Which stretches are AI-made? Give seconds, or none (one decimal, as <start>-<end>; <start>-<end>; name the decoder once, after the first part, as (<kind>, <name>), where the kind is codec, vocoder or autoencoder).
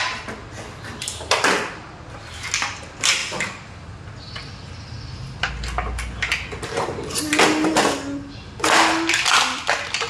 none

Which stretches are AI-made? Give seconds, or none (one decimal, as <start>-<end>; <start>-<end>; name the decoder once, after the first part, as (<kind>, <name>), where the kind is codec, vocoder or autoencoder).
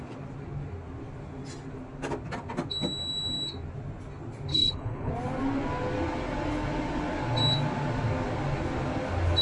4.5-5.1 (codec, HILCodec)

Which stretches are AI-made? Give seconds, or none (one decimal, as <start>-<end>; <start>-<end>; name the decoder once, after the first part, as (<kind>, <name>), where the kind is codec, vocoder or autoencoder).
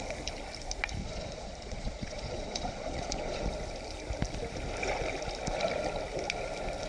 1.0-3.5 (vocoder, Vocos)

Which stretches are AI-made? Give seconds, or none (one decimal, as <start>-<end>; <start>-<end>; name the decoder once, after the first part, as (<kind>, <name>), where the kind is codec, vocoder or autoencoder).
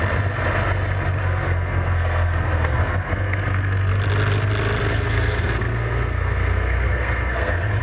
1.2-3.9 (codec, SNAC); 4.8-7.8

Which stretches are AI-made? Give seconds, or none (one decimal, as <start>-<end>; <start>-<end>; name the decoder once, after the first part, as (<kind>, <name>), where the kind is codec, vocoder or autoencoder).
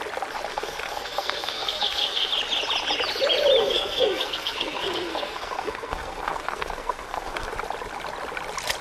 0.5-2.3 (codec, SNAC); 3.6-7.5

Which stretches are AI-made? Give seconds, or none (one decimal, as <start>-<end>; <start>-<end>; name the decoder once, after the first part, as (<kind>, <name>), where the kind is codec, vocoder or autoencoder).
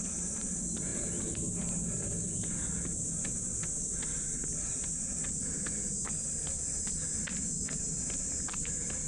none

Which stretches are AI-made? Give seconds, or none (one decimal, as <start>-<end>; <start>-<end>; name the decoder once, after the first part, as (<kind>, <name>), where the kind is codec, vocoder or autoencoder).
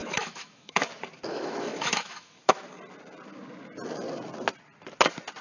0.0-0.9 (autoencoder, DAC-VAE); 1.3-2.6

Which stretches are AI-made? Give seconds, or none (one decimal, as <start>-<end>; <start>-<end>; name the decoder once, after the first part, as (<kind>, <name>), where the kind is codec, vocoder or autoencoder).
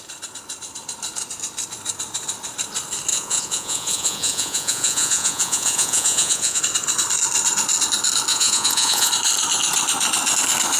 3.1-6.6 (vocoder, Vocos); 8.3-9.1